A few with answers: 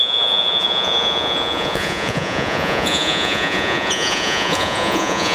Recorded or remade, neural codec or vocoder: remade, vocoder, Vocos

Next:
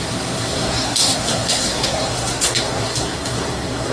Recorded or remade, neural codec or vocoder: remade, codec, SNAC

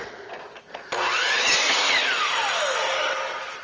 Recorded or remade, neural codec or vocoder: recorded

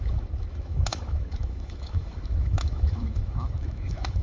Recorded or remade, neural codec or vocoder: remade, autoencoder, DAC-VAE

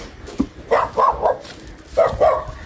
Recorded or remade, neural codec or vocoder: recorded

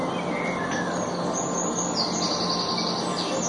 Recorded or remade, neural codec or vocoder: recorded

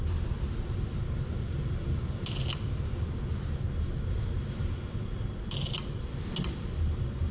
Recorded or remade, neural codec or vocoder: recorded